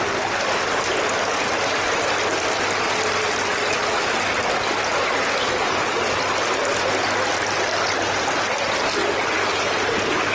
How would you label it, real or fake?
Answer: real